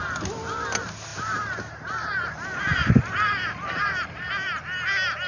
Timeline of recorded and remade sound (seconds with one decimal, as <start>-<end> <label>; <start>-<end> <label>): 0.0-1.1 recorded; 1.1-4.3 remade; 4.3-5.3 recorded